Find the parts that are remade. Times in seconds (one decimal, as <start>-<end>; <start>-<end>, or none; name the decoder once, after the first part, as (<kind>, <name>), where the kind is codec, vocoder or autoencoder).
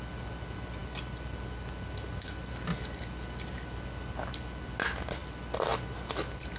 none